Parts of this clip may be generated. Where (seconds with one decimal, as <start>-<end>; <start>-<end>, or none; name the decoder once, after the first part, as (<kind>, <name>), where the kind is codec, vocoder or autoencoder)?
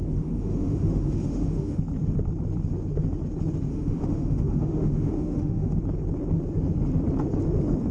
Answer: 0.0-1.8 (autoencoder, DAC-VAE); 3.7-5.8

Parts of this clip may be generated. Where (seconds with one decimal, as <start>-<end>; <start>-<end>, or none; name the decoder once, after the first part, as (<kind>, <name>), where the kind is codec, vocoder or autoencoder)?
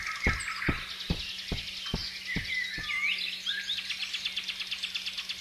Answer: none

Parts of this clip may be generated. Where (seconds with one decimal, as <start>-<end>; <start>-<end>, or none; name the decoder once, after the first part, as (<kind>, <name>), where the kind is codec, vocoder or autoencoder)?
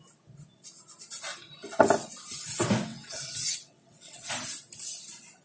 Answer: 2.9-4.3 (vocoder, WaveNeXt)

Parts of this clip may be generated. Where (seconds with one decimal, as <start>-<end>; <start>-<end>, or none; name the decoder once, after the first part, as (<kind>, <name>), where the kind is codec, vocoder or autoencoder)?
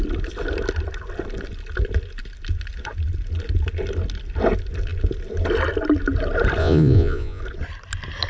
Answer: 6.6-7.4 (vocoder, Vocos)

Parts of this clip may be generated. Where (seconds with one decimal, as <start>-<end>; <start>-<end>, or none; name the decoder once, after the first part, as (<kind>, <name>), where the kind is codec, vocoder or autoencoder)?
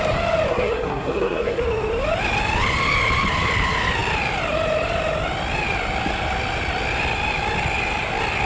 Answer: 0.5-1.6 (codec, SNAC)